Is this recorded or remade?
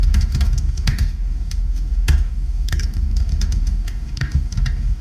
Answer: remade